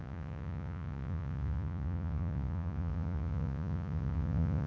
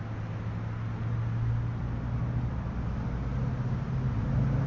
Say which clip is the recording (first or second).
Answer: second